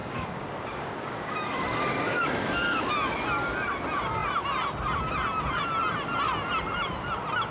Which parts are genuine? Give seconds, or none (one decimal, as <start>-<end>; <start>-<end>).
2.9-7.5